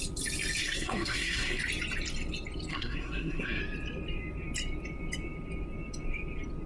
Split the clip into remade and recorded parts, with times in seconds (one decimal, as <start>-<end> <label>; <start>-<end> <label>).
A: 0.0-0.6 recorded; 0.6-1.6 remade; 1.6-2.7 recorded; 2.7-3.6 remade; 3.6-6.7 recorded